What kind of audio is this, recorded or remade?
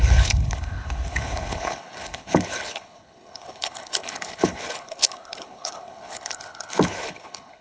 remade